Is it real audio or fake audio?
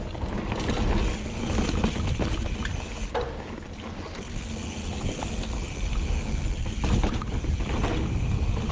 real